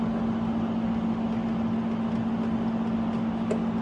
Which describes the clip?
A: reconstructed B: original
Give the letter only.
B